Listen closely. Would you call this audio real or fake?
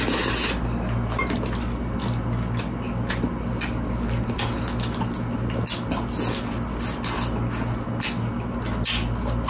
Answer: real